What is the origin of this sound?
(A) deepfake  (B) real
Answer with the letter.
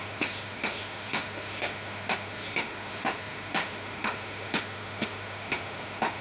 A